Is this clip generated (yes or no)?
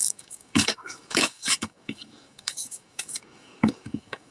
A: yes